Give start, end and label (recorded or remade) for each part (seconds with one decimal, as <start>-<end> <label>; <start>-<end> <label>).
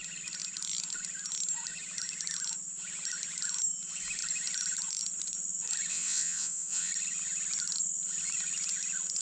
0.0-5.9 recorded; 5.9-6.9 remade; 6.9-9.2 recorded